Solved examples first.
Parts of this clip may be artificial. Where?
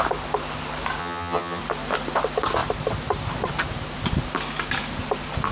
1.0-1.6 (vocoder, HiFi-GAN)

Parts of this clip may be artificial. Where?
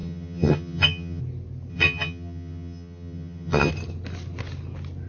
0.0-1.2 (vocoder, HiFi-GAN); 1.7-3.7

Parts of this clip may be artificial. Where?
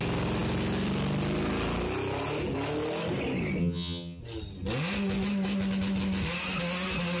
3.6-4.2 (vocoder, HiFi-GAN)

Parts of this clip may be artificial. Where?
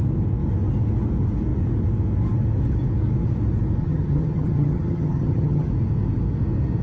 3.8-5.7 (vocoder, HiFi-GAN)